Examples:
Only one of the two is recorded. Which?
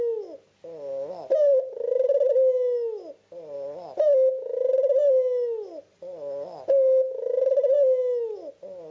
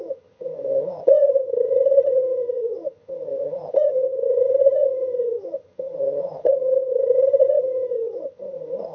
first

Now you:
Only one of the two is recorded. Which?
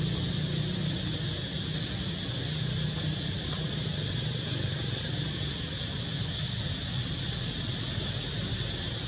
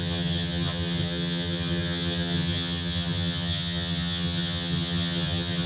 first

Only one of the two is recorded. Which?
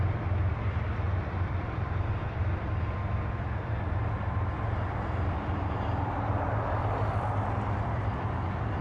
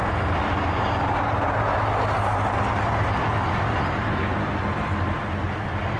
second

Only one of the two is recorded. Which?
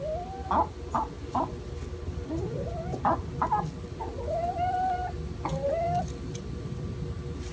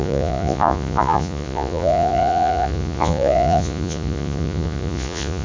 first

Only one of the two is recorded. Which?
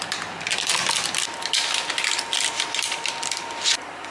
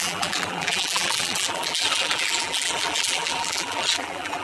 first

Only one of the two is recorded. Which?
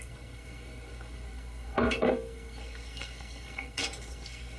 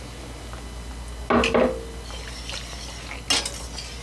second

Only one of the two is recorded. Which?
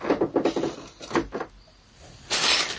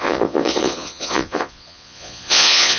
first